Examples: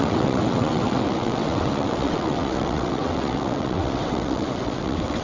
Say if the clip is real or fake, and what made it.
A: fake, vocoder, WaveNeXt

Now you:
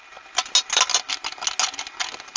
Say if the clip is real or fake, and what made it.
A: real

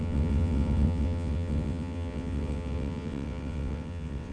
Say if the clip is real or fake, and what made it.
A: fake, vocoder, WaveNeXt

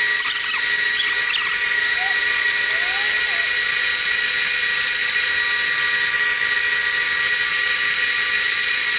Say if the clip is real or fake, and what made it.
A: real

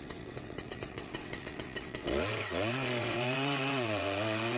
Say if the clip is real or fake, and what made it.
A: fake, vocoder, WaveNeXt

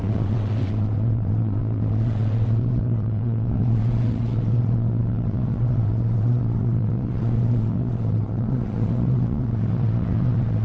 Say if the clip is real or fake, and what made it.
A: fake, vocoder, WaveNeXt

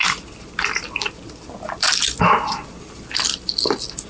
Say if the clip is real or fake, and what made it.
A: real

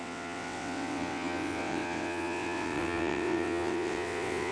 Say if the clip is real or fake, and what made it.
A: fake, vocoder, WaveNeXt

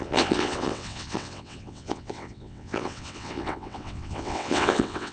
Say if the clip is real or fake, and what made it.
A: fake, vocoder, WaveNeXt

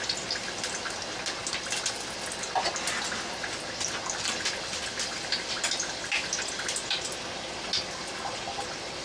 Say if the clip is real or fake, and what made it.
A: real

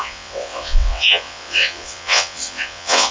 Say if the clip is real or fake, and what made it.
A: fake, vocoder, WaveNeXt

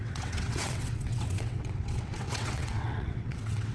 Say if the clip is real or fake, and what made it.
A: fake, vocoder, WaveNeXt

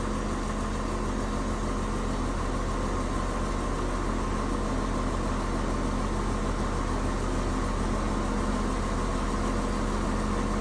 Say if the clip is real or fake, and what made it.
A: real